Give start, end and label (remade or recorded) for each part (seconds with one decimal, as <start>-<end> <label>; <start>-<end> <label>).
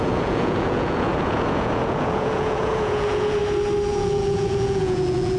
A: 0.0-3.4 remade; 3.4-3.9 recorded; 3.9-5.4 remade